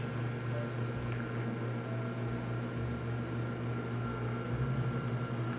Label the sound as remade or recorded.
recorded